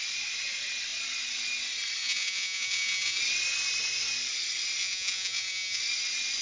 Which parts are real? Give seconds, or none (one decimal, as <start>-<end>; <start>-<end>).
0.0-2.0; 3.2-4.8; 5.8-6.4